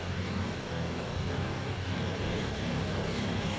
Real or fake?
fake